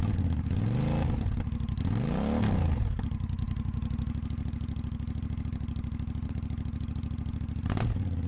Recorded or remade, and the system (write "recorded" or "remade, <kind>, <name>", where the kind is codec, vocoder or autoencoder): recorded